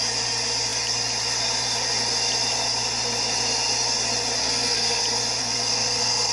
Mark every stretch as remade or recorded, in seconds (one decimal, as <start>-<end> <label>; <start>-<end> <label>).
0.0-4.4 recorded; 4.4-5.0 remade; 5.0-5.4 recorded; 5.4-6.3 remade